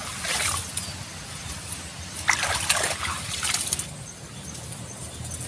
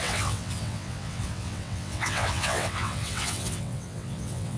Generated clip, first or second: second